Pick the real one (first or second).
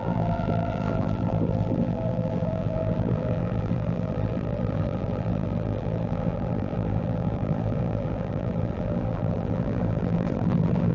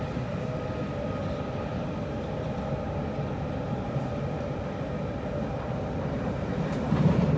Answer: second